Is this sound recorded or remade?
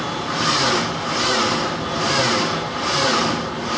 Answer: recorded